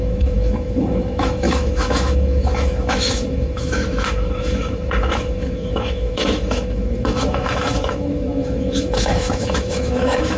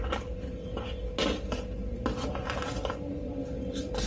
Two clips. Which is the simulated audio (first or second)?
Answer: first